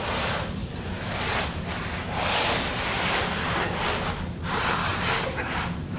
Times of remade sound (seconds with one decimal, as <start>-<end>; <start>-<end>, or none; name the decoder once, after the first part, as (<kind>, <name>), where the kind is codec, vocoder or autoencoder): 0.0-0.6 (vocoder, BigVGAN v2); 4.2-4.9; 5.4-6.0

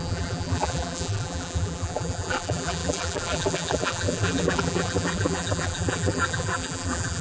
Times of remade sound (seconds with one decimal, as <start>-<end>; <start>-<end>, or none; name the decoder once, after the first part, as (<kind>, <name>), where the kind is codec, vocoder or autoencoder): 0.0-7.2 (vocoder, BigVGAN v2)

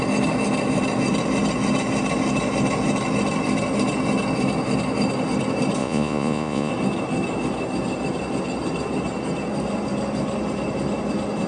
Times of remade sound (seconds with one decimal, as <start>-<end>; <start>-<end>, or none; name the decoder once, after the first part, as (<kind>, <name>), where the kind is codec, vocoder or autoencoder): 5.8-6.7 (vocoder, Vocos)

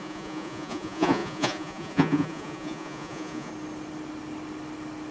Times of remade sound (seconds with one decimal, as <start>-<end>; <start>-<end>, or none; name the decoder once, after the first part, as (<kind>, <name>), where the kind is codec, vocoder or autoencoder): 0.0-3.5 (vocoder, Vocos)

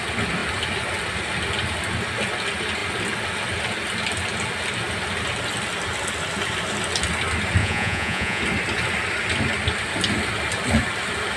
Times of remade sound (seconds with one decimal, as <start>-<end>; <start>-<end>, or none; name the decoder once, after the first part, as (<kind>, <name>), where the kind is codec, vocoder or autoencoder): 7.6-8.4 (vocoder, Vocos)